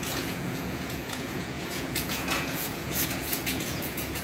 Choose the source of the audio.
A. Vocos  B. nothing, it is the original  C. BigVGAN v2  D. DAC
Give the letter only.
A